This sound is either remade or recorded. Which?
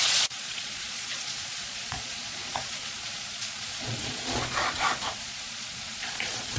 remade